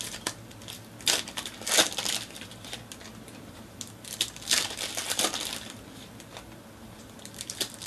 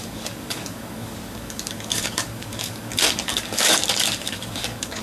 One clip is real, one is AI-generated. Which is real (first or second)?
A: first